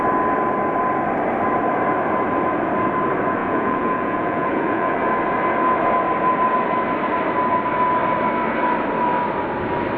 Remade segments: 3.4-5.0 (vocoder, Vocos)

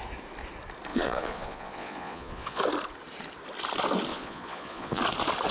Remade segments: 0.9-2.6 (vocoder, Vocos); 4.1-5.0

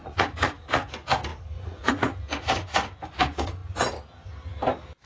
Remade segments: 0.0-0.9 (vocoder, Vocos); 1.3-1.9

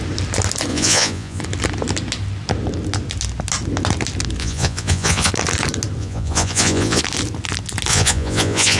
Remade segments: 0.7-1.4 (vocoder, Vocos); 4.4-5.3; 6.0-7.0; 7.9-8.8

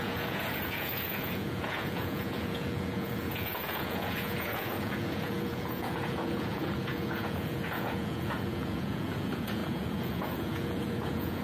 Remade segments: 0.0-11.4 (vocoder, Vocos)